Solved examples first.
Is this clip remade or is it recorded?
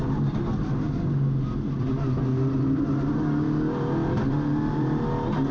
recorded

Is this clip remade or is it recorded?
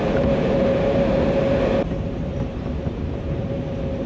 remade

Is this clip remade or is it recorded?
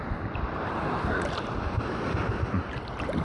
recorded